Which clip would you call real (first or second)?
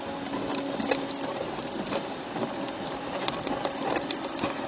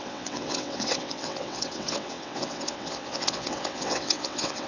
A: first